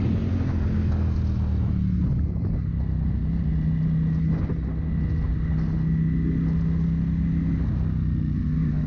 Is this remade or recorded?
recorded